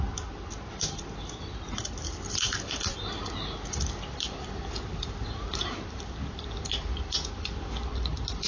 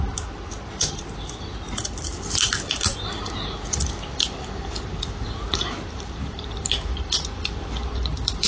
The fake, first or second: second